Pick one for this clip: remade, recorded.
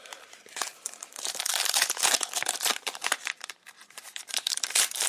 remade